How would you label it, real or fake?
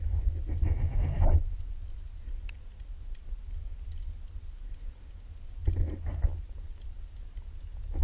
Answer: real